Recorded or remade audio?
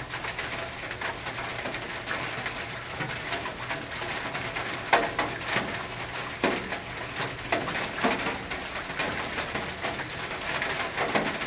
recorded